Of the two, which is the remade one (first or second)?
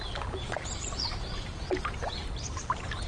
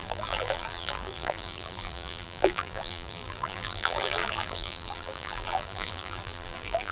second